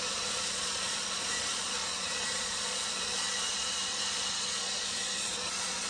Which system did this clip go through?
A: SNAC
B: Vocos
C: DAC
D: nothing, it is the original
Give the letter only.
B